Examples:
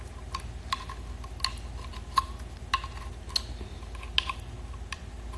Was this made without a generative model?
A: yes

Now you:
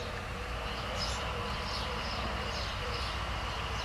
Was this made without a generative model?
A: no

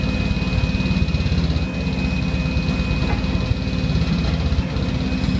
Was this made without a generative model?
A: yes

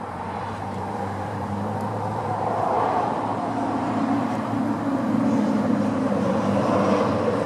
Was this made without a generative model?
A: no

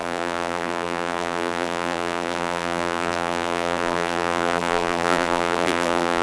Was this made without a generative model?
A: no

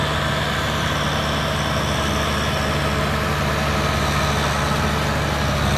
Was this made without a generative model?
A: yes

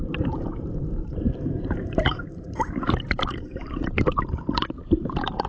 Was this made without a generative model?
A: no